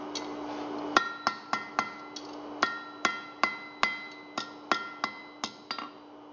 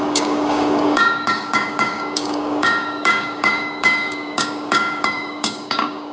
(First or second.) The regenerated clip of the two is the second